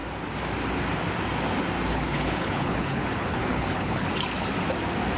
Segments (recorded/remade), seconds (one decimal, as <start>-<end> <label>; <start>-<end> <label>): 0.0-1.9 recorded; 1.9-4.1 remade; 4.1-5.2 recorded